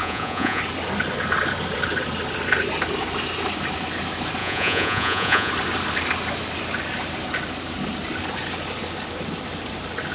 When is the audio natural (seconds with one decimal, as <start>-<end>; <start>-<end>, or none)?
0.6-4.4; 5.5-10.1